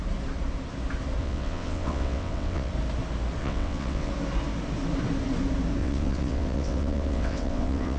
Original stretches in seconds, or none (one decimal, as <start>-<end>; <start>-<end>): 0.0-1.2; 2.7-3.4; 4.1-5.8